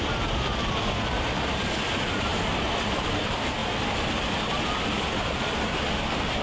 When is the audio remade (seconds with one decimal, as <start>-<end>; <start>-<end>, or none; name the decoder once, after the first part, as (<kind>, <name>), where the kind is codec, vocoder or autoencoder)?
none